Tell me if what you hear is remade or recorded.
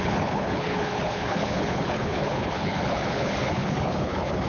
remade